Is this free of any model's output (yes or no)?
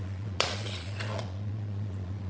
no